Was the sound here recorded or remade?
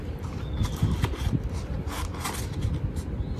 recorded